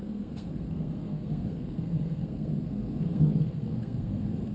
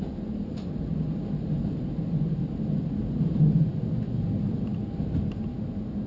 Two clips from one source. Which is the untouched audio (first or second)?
second